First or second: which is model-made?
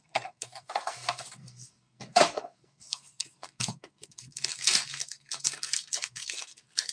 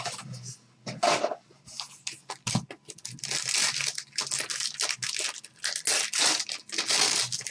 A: first